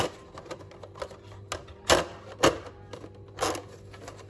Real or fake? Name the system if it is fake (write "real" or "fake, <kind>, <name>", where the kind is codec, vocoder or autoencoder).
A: real